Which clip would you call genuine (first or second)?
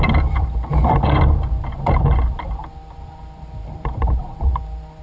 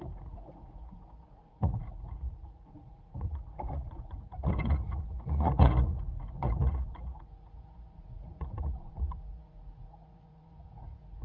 first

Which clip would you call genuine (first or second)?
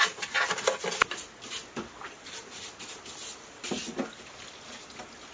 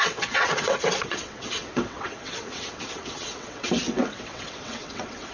first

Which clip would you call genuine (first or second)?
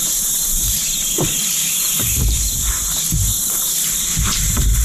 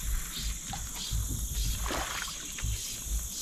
second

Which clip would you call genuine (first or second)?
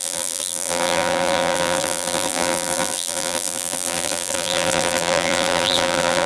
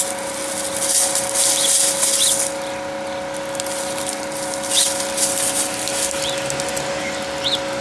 second